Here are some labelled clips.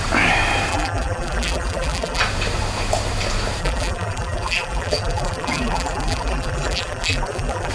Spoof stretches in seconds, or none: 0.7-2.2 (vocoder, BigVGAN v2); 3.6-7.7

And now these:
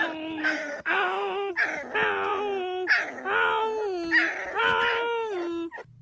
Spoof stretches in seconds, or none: 0.4-1.5 (autoencoder, DAC-VAE)

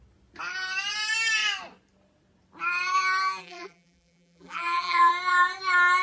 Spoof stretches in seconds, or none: 3.4-5.1 (vocoder, BigVGAN v2)

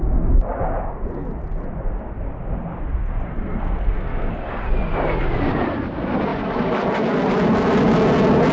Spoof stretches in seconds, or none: 3.3-4.3 (codec, SNAC)